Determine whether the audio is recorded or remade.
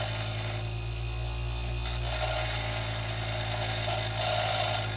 recorded